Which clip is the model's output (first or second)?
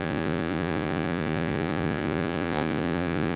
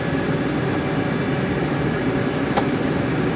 first